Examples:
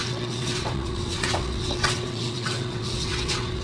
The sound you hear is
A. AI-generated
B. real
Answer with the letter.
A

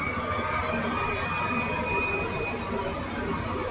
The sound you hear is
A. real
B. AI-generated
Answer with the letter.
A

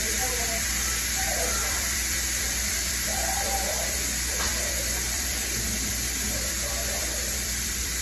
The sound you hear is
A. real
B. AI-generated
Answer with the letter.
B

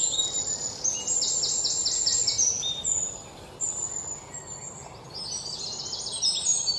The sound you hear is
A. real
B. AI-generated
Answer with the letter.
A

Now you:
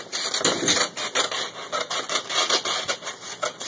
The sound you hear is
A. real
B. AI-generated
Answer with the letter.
A